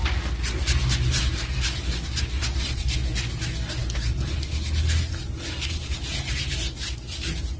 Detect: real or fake real